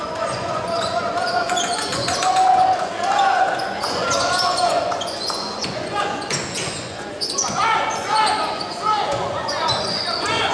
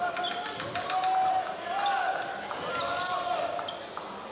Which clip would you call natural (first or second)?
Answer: second